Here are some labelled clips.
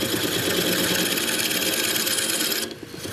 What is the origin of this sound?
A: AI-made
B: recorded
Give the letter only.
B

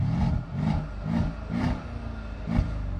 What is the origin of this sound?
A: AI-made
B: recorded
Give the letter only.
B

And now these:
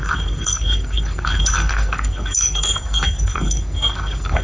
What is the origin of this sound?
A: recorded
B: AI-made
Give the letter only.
B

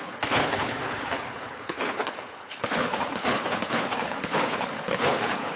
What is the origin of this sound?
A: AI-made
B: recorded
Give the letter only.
A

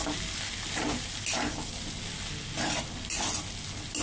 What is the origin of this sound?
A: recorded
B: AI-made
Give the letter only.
A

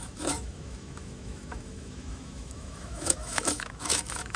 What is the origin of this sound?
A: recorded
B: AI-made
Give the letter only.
B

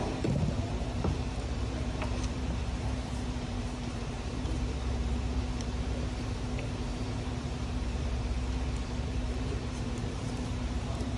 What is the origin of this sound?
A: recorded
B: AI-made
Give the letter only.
B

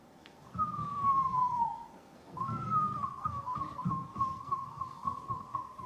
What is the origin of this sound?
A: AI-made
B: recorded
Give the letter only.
A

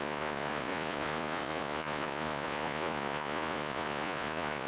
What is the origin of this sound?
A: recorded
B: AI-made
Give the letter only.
B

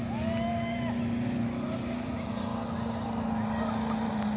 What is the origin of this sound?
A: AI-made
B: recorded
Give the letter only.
B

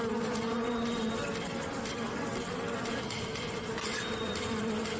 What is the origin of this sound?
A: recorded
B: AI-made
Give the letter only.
A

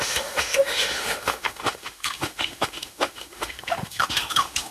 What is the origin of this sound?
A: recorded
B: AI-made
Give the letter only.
B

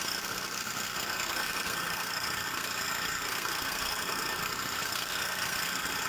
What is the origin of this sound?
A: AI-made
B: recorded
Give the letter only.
A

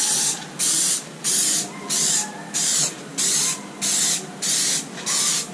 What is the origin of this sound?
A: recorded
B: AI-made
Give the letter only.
A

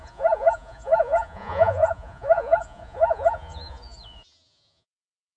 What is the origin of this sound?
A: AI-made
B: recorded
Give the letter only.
A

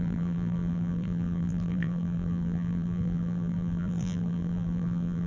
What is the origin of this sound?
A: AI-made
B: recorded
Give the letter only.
A